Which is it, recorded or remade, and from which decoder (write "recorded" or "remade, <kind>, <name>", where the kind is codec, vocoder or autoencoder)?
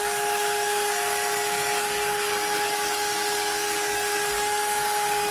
remade, codec, DAC